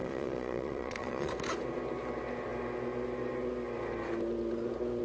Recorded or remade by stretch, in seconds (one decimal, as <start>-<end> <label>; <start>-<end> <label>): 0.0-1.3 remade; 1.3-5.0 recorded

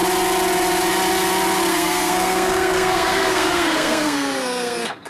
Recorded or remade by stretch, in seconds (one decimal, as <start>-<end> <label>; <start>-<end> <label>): 0.0-1.7 recorded; 1.7-5.1 remade

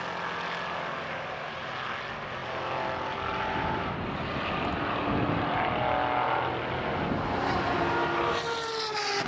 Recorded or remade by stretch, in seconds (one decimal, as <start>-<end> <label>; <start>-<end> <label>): 0.0-9.3 recorded

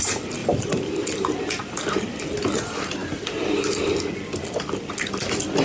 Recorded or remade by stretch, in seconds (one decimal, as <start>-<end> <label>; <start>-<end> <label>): 0.0-0.4 recorded; 0.4-2.2 remade; 2.2-3.0 recorded; 3.0-3.9 remade; 3.9-5.6 recorded

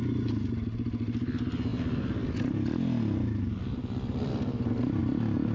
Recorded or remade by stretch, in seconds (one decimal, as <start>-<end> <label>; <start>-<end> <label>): 0.0-5.5 recorded